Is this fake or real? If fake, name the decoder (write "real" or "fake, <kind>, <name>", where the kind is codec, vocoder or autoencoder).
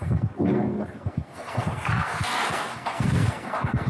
fake, codec, SNAC